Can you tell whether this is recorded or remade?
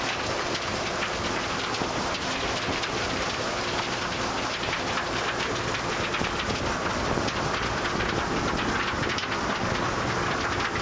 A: recorded